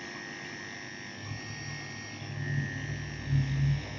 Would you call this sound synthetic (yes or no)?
no